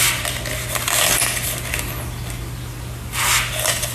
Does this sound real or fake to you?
real